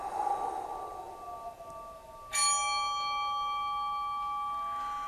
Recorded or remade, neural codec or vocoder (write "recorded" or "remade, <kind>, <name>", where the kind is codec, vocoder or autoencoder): recorded